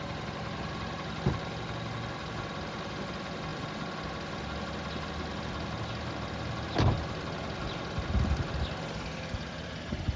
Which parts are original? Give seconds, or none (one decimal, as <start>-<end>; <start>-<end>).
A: 0.0-10.2

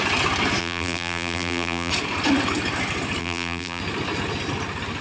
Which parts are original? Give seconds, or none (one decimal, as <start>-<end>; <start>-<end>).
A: 0.0-0.6; 1.9-3.2; 3.8-5.0